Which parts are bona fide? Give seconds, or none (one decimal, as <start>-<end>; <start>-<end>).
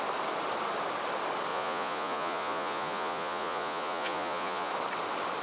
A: 0.0-1.5; 4.7-5.4